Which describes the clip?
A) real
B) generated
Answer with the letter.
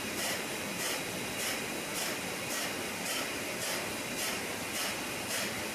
B